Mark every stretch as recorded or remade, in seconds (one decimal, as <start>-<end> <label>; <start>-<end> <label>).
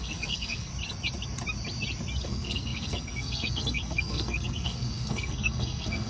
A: 0.0-0.7 remade; 0.7-2.2 recorded; 2.2-6.1 remade